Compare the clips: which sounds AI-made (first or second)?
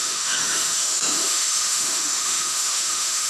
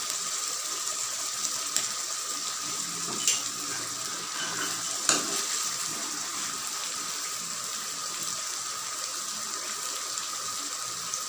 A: first